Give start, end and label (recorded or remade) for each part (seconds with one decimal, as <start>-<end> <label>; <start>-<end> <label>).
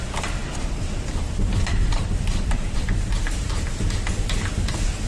0.0-0.4 recorded; 0.4-3.5 remade; 3.5-5.1 recorded